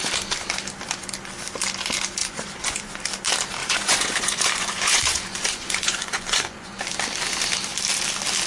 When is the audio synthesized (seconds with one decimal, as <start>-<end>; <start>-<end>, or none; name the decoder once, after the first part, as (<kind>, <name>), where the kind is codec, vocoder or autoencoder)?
2.2-3.0 (vocoder, Vocos); 3.6-6.8